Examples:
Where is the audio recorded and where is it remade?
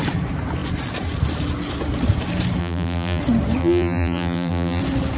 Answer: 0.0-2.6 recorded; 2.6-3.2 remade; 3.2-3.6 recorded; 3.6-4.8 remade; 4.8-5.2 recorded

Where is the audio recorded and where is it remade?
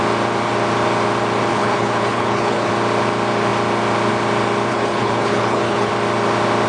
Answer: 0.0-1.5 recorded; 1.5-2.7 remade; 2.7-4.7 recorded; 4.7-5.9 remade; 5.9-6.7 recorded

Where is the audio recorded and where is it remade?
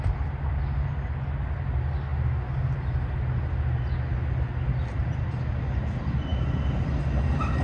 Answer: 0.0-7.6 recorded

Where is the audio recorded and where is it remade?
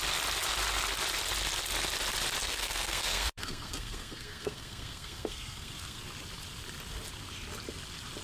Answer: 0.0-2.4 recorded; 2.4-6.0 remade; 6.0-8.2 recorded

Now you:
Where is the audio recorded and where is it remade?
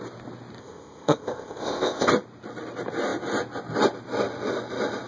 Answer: 0.0-0.6 recorded; 0.6-2.1 remade; 2.1-5.1 recorded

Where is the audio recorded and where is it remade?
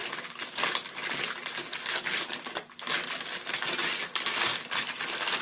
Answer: 0.0-0.7 remade; 0.7-3.8 recorded; 3.8-4.9 remade; 4.9-5.4 recorded